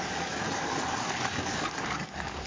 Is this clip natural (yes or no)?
no